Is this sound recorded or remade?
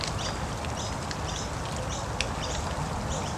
recorded